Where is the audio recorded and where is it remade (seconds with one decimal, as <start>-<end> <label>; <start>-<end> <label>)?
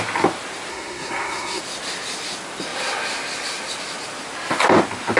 0.0-0.7 recorded; 0.7-1.6 remade; 1.6-5.2 recorded